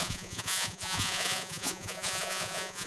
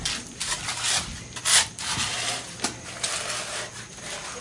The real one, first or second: second